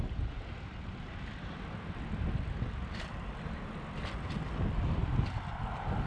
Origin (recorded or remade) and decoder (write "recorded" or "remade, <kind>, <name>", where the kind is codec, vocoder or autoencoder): recorded